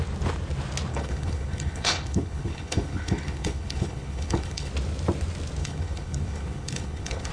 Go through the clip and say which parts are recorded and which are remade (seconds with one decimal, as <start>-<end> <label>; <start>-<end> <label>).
0.0-0.9 recorded; 0.9-4.7 remade; 4.7-5.6 recorded; 5.6-7.3 remade